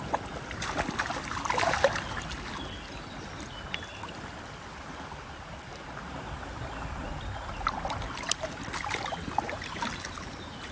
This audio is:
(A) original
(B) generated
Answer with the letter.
A